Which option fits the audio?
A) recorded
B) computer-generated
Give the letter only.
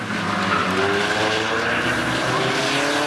A